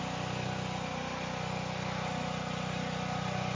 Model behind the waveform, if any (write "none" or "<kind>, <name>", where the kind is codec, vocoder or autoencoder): none